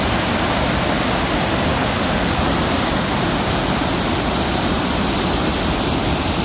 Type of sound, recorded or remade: recorded